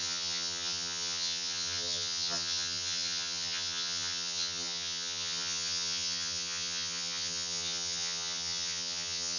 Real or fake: fake